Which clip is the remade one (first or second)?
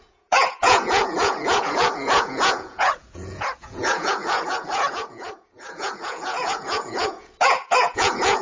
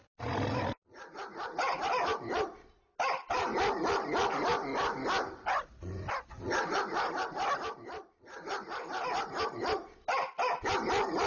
first